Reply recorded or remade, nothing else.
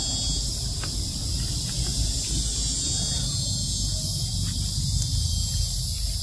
recorded